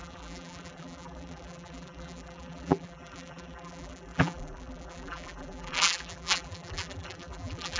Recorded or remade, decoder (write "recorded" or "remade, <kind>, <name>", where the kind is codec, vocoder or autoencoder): remade, vocoder, BigVGAN v2